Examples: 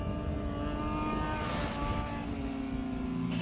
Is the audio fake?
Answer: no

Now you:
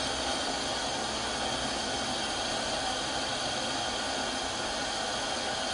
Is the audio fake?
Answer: no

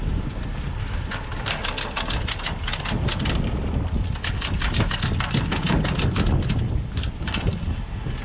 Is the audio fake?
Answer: no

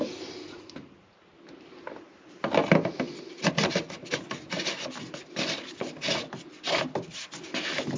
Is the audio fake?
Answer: no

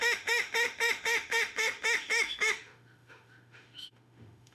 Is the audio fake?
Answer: yes